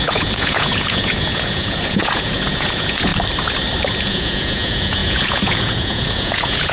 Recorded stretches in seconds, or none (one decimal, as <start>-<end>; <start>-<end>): 3.1-3.9